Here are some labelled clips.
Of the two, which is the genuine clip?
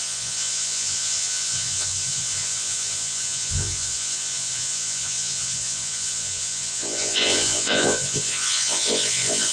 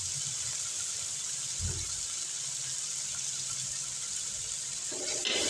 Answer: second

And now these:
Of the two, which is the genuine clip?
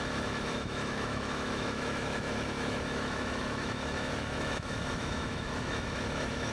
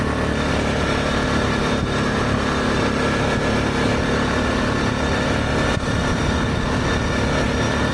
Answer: second